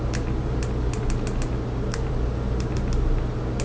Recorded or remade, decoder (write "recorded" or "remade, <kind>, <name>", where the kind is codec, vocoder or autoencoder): recorded